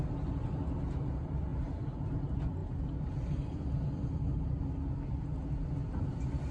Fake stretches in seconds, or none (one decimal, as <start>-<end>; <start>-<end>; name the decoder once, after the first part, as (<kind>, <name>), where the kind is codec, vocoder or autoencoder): none

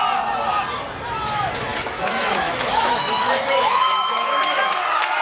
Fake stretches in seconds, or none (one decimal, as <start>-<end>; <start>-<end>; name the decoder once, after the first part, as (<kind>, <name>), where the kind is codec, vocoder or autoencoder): 1.7-4.8 (autoencoder, DAC-VAE)

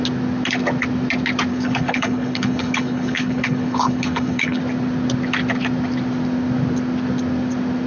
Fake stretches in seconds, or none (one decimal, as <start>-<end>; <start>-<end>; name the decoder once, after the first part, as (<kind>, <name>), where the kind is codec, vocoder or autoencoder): 1.5-4.6 (codec, HILCodec)

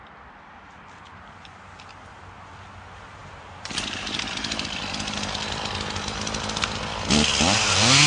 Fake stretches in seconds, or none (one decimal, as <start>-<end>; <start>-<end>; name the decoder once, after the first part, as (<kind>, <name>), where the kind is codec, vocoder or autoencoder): 3.2-4.8 (vocoder, BigVGAN v2)

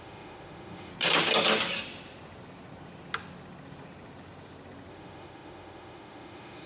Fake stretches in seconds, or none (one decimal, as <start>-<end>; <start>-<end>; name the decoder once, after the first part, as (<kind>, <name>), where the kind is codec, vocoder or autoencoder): 0.0-0.9 (autoencoder, DAC-VAE); 4.9-6.7

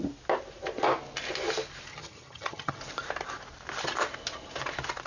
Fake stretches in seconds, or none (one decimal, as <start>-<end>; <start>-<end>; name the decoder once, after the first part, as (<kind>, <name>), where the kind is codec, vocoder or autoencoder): 1.9-2.8 (vocoder, HiFi-GAN)